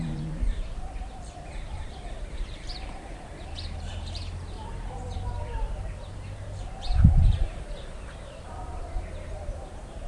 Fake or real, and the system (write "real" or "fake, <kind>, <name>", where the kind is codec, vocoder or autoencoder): fake, vocoder, BigVGAN v2